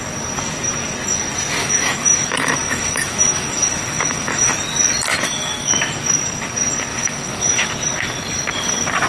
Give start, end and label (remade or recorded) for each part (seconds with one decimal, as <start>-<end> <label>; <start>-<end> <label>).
0.0-1.6 recorded; 1.6-4.5 remade; 4.5-5.1 recorded; 5.1-5.7 remade; 5.7-6.9 recorded; 6.9-7.7 remade; 7.7-9.1 recorded